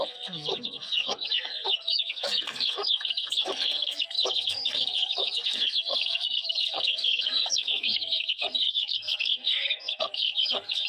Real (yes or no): no